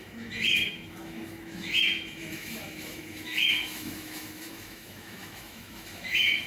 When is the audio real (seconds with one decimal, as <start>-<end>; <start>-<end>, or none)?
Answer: none